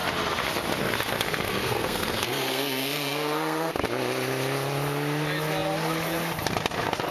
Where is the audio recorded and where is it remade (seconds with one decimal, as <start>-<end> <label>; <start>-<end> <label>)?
0.0-1.5 recorded; 1.5-3.7 remade; 3.7-7.1 recorded